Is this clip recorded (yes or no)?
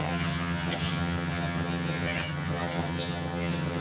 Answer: no